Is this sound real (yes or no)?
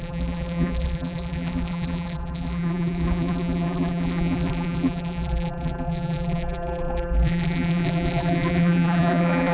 no